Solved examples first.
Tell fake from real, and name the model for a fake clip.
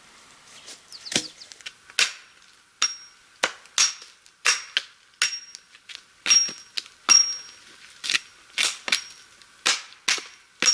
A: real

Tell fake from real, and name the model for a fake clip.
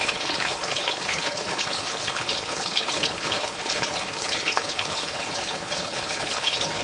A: fake, codec, HILCodec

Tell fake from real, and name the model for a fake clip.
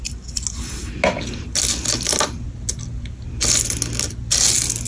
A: real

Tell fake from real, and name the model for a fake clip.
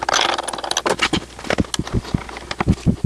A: real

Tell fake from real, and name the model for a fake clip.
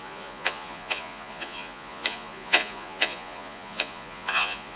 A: fake, vocoder, Vocos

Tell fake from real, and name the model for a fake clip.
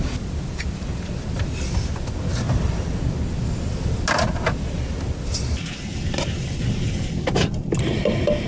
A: real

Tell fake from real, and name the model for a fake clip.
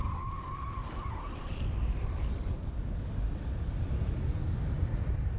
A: real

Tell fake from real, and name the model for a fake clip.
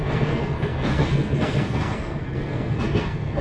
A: fake, codec, SNAC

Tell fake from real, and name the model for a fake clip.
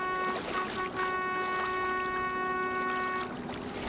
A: real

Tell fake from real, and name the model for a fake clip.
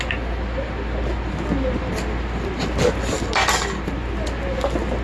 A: real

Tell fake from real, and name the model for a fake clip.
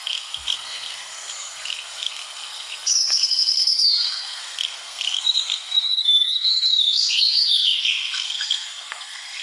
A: fake, codec, SNAC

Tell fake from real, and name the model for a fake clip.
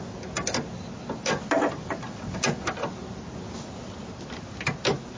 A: real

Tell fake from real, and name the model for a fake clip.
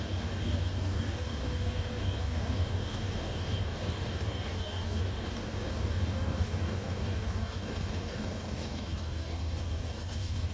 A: fake, codec, DAC